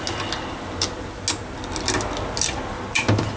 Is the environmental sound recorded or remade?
recorded